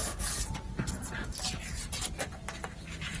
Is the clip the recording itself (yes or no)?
yes